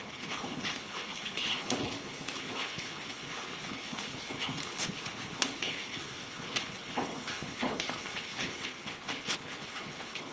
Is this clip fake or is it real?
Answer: fake